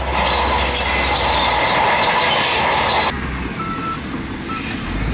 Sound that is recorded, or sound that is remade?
recorded